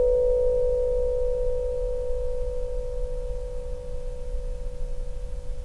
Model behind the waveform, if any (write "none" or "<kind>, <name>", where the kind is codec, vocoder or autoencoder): none